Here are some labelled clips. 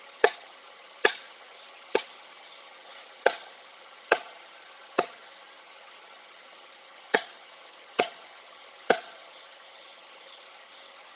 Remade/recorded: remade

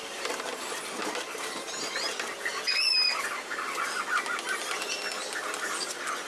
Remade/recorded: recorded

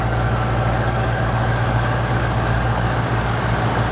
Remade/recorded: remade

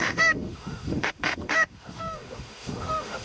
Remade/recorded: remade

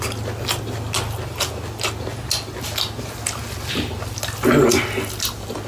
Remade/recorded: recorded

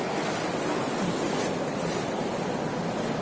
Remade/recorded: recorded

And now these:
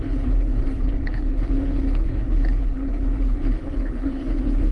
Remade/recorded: remade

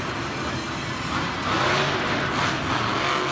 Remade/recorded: recorded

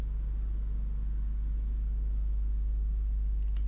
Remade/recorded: recorded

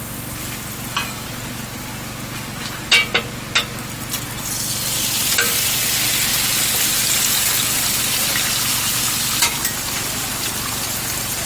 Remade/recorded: recorded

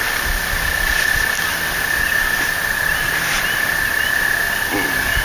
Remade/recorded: recorded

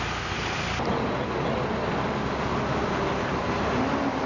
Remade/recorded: recorded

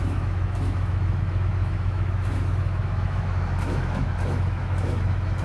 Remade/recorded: remade